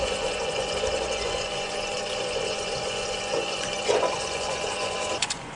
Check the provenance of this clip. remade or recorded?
remade